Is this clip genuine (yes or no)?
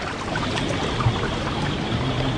yes